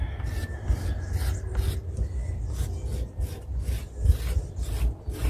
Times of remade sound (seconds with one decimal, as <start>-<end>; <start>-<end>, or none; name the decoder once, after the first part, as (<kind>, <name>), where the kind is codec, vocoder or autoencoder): none